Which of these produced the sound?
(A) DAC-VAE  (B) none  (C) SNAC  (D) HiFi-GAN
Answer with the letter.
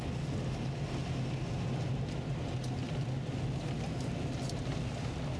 B